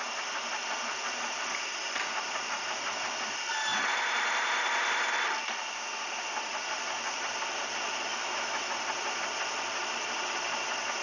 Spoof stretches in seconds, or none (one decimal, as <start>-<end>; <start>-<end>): 8.1-8.7

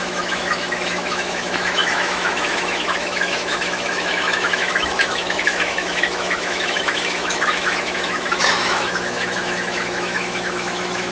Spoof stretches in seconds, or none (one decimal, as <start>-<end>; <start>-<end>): 0.0-11.1